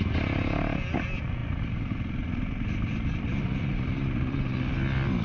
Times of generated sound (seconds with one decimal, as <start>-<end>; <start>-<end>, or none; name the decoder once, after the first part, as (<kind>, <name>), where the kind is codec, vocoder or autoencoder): 1.4-4.5 (vocoder, BigVGAN v2)

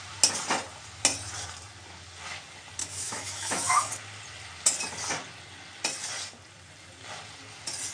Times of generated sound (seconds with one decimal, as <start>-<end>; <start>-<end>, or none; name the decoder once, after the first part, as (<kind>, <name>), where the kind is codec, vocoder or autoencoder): 2.8-3.9 (autoencoder, DAC-VAE)

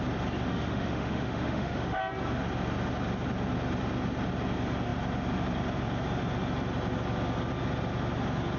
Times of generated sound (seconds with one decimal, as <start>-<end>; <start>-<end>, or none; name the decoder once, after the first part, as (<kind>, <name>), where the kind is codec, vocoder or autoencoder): 0.5-2.0 (autoencoder, DAC-VAE)

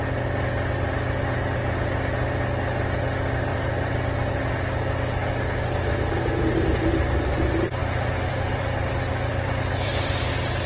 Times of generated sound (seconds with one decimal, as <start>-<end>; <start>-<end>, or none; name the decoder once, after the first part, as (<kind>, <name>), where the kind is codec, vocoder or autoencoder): 3.5-4.4 (vocoder, BigVGAN v2); 7.8-8.9; 9.3-10.2

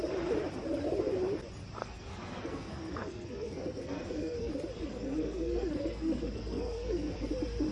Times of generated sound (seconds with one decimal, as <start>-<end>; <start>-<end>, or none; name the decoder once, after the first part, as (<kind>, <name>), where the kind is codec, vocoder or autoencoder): 1.8-4.5 (codec, SNAC); 4.9-7.3

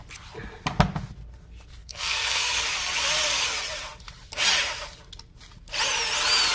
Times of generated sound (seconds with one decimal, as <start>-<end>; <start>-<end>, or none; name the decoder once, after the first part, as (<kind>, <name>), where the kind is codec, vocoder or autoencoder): 1.8-2.5 (codec, SNAC)

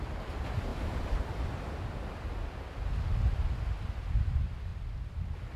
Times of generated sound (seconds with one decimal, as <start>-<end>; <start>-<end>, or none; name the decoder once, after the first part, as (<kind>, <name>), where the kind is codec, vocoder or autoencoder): none

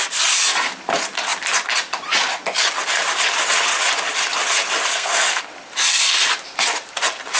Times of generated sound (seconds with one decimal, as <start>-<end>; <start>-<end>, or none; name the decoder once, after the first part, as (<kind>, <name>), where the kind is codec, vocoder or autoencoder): 4.9-5.4 (codec, SNAC)